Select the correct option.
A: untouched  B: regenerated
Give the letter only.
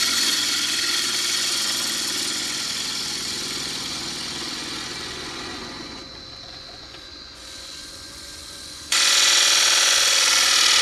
B